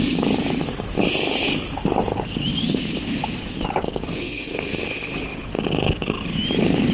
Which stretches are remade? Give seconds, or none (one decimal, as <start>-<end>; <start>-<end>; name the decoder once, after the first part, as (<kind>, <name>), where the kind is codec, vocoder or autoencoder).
4.2-4.8 (codec, SNAC)